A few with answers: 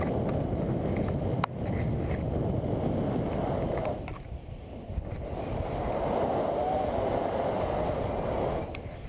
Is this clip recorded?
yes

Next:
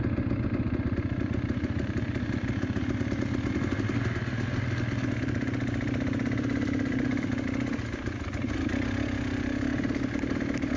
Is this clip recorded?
yes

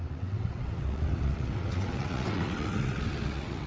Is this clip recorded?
no